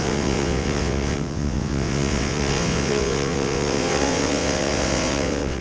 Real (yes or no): no